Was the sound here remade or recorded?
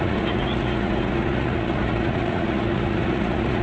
remade